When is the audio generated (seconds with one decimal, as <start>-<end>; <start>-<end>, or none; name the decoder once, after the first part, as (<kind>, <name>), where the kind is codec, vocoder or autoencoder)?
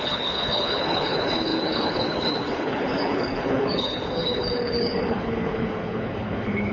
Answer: 0.0-6.7 (codec, HILCodec)